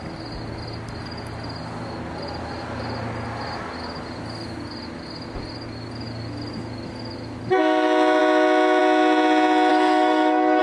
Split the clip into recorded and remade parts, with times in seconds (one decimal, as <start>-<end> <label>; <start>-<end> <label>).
0.0-9.7 recorded; 9.7-10.6 remade